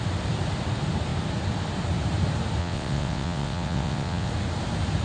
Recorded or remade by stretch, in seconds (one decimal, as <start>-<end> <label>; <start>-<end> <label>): 0.0-2.6 recorded; 2.6-4.3 remade; 4.3-5.0 recorded